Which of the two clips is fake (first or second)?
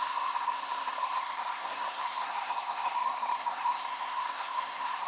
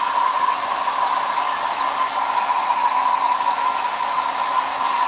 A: first